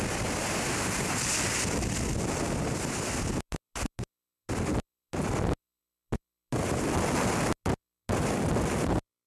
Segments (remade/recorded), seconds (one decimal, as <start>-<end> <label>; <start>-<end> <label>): 0.0-9.3 recorded